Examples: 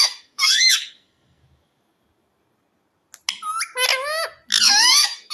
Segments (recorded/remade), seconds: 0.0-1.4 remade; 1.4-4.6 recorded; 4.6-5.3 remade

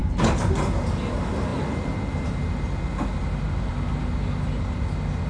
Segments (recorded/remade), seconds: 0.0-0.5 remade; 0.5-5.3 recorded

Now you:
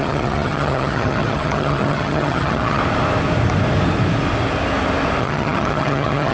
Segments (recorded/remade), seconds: 0.0-2.8 remade; 2.8-5.2 recorded; 5.2-6.3 remade

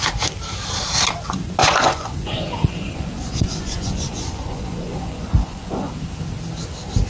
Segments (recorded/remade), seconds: 0.0-1.6 recorded; 1.6-5.9 remade; 5.9-7.1 recorded